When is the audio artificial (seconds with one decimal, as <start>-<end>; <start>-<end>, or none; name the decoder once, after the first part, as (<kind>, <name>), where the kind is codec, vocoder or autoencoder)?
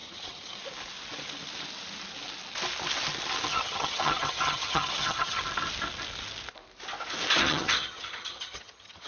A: 0.0-0.6 (vocoder, HiFi-GAN); 3.5-5.4; 7.4-9.1